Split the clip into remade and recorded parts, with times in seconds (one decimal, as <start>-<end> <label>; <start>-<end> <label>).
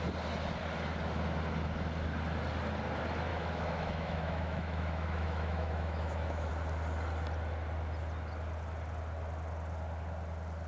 0.0-3.3 recorded; 3.3-6.5 remade; 6.5-10.7 recorded